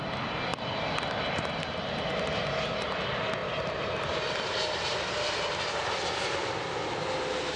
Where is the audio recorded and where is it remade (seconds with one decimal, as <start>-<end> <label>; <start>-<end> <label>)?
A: 0.0-3.4 recorded; 3.4-6.5 remade; 6.5-7.6 recorded